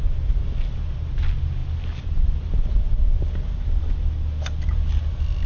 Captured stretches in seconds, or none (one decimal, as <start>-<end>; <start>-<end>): 0.0-5.5